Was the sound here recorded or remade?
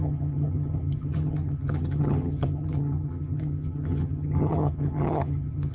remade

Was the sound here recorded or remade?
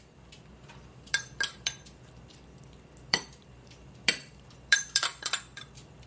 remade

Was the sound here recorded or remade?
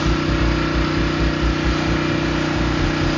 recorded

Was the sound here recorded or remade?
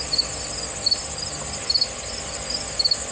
recorded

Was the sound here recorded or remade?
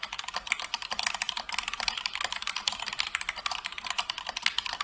remade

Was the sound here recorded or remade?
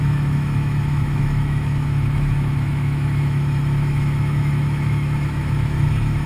remade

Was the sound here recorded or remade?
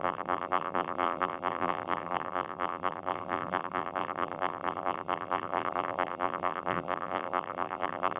remade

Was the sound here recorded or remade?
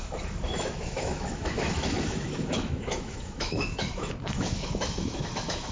remade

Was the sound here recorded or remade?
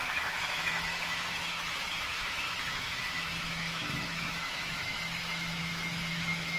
remade